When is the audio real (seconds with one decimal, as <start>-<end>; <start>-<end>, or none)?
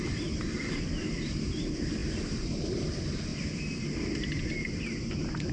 0.0-5.5